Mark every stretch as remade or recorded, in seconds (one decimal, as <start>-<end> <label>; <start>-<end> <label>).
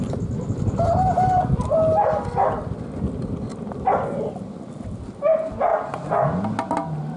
0.0-7.2 recorded